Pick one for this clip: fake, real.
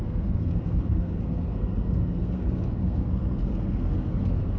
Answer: fake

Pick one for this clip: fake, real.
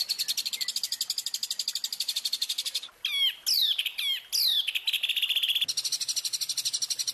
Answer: real